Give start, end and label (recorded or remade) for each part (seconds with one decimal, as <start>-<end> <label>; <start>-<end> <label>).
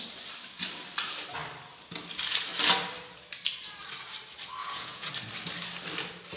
0.0-4.6 recorded; 4.6-5.1 remade; 5.1-6.4 recorded